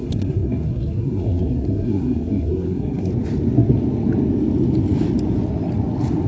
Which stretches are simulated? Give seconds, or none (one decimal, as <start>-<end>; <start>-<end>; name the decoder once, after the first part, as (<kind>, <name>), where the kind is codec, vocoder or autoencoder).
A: 0.0-3.1 (codec, SNAC)